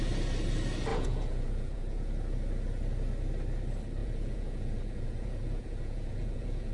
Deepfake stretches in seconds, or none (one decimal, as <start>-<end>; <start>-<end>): 0.9-2.1; 4.0-6.7